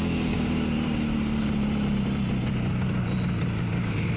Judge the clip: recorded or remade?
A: recorded